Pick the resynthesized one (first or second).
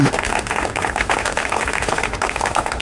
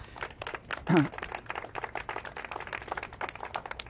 first